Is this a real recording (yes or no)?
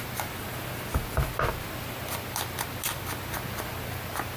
yes